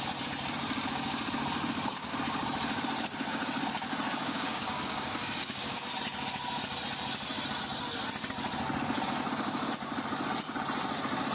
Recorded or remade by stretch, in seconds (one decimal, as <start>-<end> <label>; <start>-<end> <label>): 0.0-4.2 recorded; 4.2-5.8 remade; 5.8-11.3 recorded